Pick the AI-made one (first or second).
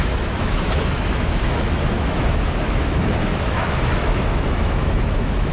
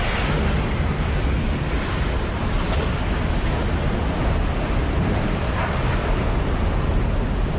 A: first